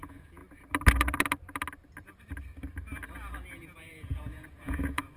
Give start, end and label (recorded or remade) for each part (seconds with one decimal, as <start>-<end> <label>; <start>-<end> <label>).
0.0-0.4 remade; 0.4-3.5 recorded; 3.5-5.2 remade